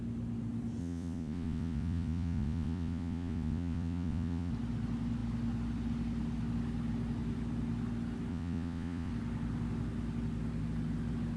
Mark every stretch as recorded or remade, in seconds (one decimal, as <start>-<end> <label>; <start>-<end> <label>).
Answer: 0.0-0.8 recorded; 0.8-4.5 remade; 4.5-8.3 recorded; 8.3-9.1 remade; 9.1-11.4 recorded